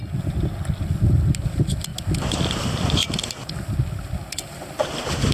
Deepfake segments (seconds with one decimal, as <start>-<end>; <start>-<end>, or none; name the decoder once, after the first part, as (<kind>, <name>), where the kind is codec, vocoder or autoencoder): 1.9-3.2 (vocoder, BigVGAN v2)